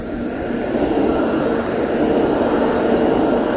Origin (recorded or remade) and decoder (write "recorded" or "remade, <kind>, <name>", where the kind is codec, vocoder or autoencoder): recorded